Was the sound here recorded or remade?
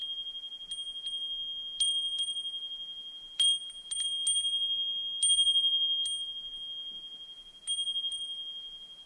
recorded